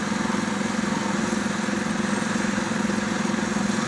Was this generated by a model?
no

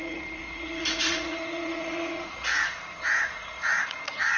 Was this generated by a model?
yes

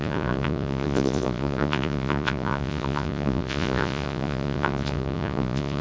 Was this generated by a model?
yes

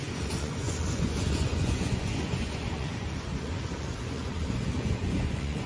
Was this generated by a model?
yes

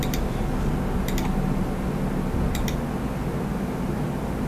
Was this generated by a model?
no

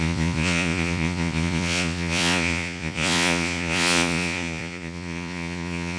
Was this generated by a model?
yes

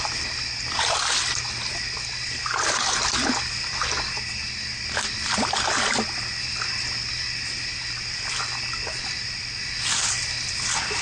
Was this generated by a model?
no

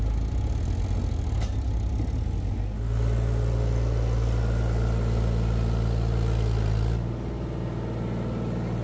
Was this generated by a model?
no